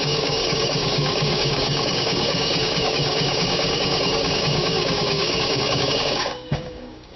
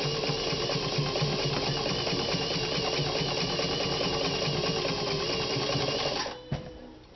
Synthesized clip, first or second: first